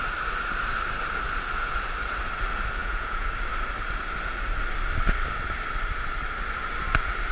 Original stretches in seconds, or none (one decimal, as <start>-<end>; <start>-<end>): 0.0-2.8; 3.3-7.3